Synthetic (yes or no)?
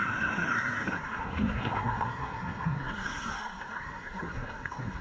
yes